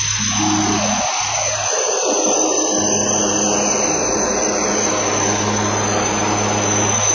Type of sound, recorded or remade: recorded